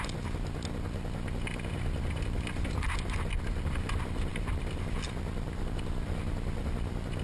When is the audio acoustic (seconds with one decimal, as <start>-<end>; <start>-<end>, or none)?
0.0-7.2